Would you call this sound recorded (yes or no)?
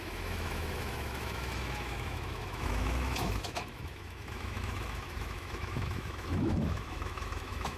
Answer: no